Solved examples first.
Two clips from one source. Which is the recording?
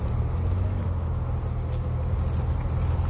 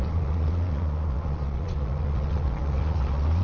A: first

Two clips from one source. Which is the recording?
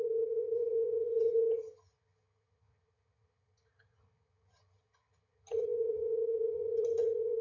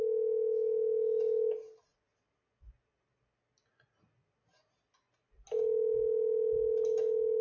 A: second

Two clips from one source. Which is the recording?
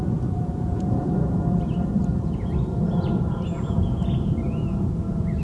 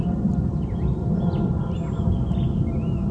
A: second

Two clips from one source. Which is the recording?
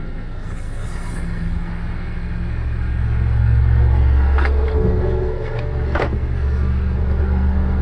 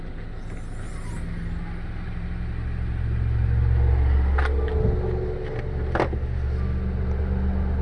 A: second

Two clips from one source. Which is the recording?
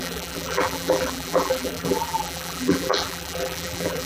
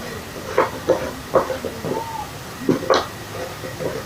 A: second